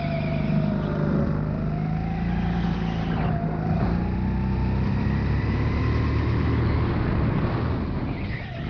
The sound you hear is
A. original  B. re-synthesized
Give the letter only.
A